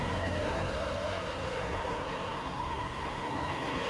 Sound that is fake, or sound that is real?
fake